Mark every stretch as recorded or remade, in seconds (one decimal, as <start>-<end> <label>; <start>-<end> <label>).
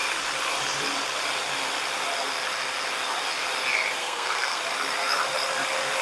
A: 0.0-4.0 recorded; 4.0-4.6 remade; 4.6-6.0 recorded